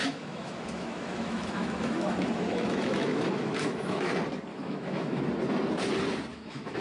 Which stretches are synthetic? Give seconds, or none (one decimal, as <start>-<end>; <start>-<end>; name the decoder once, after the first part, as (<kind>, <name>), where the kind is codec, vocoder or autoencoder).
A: 0.0-4.1 (autoencoder, DAC-VAE); 4.5-5.2; 6.3-6.8